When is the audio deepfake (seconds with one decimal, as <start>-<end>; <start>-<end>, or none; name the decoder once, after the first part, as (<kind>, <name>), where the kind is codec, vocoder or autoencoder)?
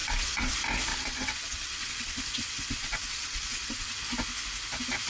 0.0-0.5 (vocoder, WaveNeXt); 0.9-4.0